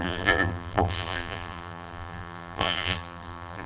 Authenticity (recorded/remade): remade